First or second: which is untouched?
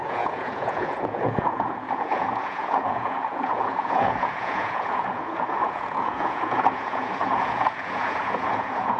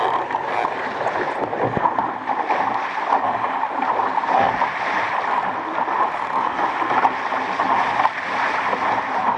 second